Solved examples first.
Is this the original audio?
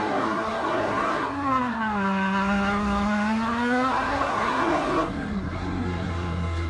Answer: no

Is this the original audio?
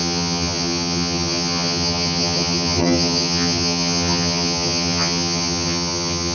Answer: no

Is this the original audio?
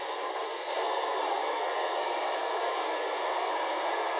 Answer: no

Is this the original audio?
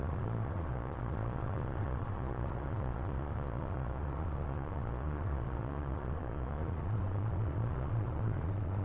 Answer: no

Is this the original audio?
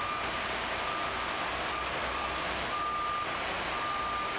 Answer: yes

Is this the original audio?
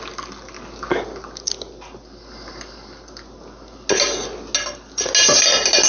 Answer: yes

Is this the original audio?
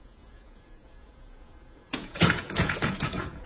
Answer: no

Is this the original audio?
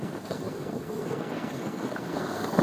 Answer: no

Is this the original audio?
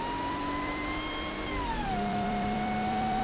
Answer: no